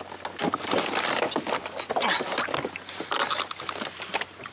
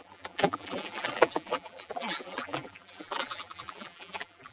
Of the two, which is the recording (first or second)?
first